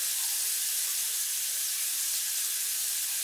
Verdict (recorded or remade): recorded